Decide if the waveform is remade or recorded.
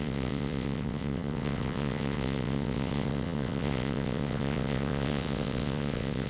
remade